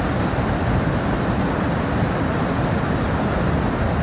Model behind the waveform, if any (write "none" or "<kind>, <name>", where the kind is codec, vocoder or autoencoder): none